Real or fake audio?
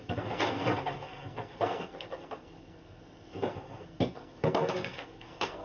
fake